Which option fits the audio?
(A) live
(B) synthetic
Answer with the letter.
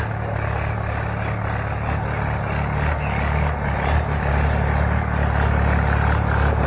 A